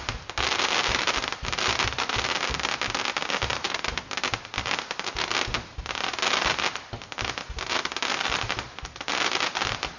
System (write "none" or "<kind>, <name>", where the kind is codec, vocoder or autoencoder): none